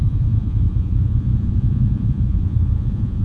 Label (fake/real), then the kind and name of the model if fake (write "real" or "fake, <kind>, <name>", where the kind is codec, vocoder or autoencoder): fake, vocoder, Vocos